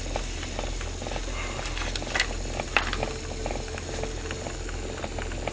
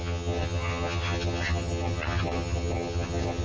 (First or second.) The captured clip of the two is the first